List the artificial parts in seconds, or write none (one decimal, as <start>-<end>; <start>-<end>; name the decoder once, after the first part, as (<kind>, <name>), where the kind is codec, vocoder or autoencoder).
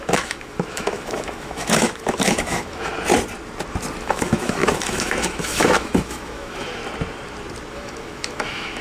0.0-2.9 (autoencoder, DAC-VAE); 4.0-6.8; 7.7-8.8